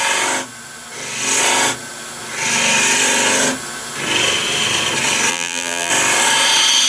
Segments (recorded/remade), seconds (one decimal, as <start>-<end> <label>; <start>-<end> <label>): 0.0-5.3 recorded; 5.3-5.9 remade; 5.9-6.9 recorded